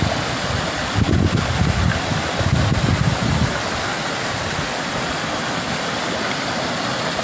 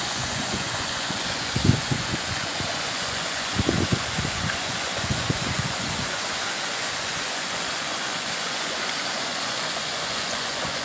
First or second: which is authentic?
first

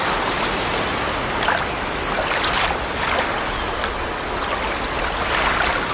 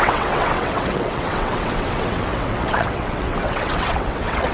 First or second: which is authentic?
first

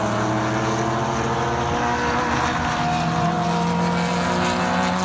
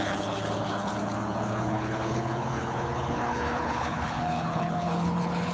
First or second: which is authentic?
first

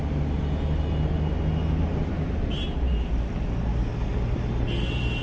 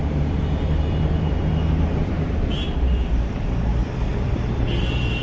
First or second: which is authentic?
first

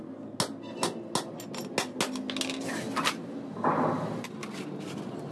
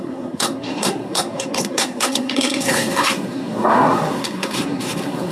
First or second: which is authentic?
first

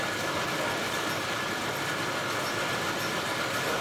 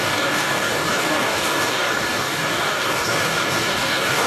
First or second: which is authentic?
first